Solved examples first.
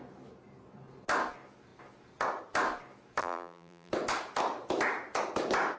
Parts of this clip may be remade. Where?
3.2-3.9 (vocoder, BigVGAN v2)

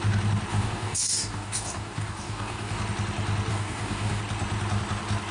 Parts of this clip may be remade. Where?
0.5-2.8 (codec, DAC); 3.5-4.2

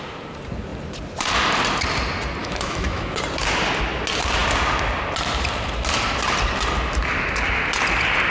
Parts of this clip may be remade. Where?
2.4-3.2 (autoencoder, DAC-VAE)

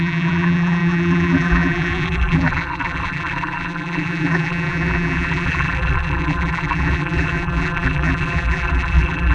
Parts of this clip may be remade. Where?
0.0-9.3 (vocoder, BigVGAN v2)

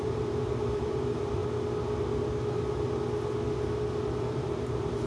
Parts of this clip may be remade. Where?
0.0-1.4 (vocoder, BigVGAN v2); 4.3-5.1

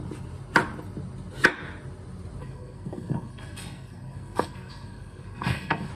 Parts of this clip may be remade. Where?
2.4-5.9 (codec, SNAC)

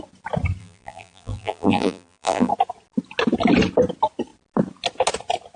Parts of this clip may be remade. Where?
0.6-2.5 (vocoder, BigVGAN v2)

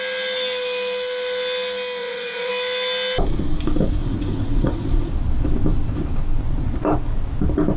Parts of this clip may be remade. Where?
2.0-2.5 (vocoder, Vocos); 4.0-5.1